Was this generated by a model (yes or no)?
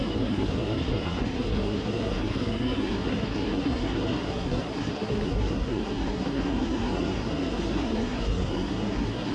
yes